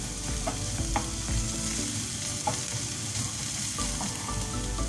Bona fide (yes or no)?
yes